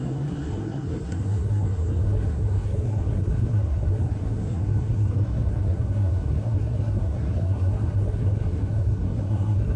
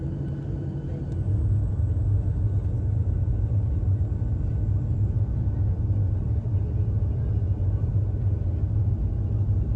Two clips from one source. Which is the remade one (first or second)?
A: first